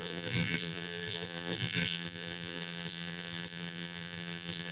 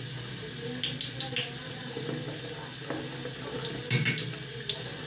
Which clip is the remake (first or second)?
first